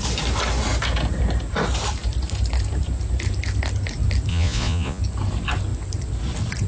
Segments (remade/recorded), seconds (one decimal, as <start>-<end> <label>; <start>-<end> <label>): 0.0-4.3 recorded; 4.3-5.0 remade; 5.0-6.7 recorded